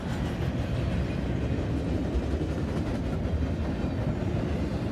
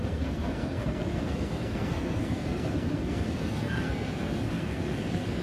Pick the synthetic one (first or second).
second